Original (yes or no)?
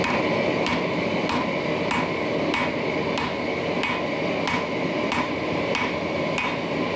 yes